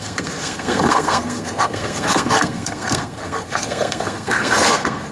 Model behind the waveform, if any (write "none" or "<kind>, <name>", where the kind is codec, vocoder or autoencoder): codec, SNAC